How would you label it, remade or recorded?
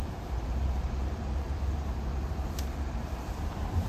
remade